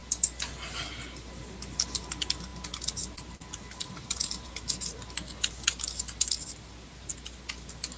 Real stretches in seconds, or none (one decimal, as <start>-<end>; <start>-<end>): 0.0-8.0